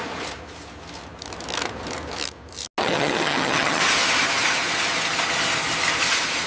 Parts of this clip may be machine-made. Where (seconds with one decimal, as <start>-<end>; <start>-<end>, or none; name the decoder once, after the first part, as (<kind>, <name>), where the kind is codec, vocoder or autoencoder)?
2.8-3.8 (vocoder, HiFi-GAN)